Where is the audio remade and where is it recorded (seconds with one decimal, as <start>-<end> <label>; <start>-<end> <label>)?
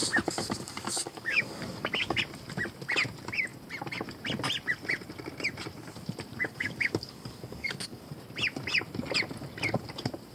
0.0-2.2 remade; 2.2-6.4 recorded; 6.4-8.2 remade; 8.2-10.3 recorded